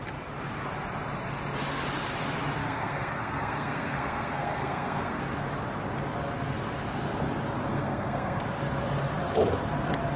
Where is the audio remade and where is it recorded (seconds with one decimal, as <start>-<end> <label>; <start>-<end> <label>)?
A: 0.0-2.6 recorded; 2.6-5.2 remade; 5.2-7.7 recorded; 7.7-8.4 remade; 8.4-10.2 recorded